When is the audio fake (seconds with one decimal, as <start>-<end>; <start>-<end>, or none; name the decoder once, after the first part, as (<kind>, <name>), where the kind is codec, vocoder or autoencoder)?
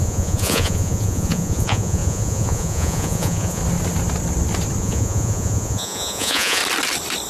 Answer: 0.0-3.6 (vocoder, Vocos); 4.8-6.6